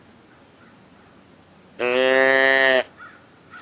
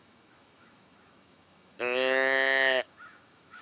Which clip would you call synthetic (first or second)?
second